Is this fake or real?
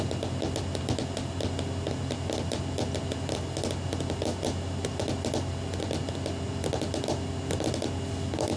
real